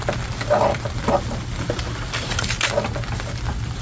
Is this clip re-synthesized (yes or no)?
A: no